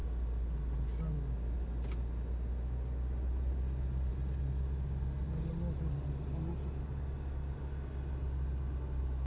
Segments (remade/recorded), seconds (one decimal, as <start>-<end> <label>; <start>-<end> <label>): 0.0-9.3 recorded